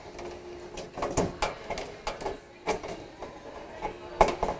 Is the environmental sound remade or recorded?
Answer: recorded